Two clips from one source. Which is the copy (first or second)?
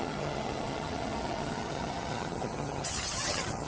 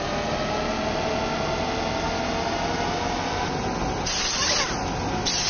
first